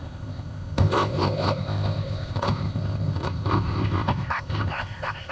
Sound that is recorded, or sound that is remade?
remade